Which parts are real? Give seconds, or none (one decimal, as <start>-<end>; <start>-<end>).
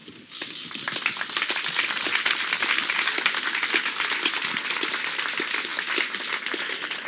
0.0-7.1